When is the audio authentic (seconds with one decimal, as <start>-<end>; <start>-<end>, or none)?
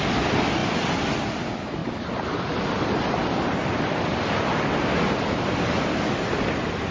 0.0-6.9